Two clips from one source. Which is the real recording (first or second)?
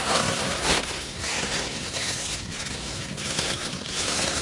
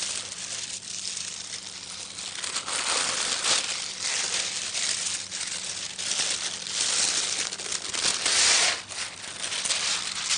second